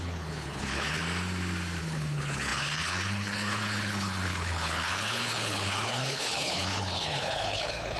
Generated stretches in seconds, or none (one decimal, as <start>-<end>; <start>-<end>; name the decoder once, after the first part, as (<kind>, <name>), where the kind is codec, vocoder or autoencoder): 0.0-1.0 (codec, HILCodec); 1.8-8.0